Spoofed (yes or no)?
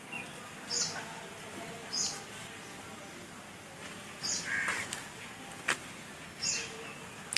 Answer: no